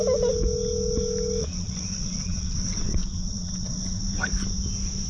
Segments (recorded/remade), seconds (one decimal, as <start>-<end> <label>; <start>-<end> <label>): 0.0-1.4 recorded; 1.4-4.0 remade; 4.0-5.1 recorded